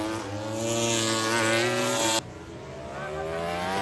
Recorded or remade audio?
recorded